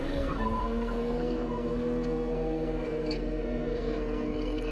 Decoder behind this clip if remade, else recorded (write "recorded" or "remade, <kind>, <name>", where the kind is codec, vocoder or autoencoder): remade, codec, SNAC